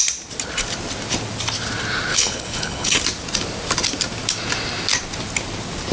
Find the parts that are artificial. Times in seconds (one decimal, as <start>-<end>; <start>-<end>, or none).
2.1-3.0